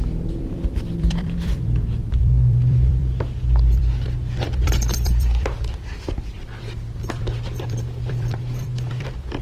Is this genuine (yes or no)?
no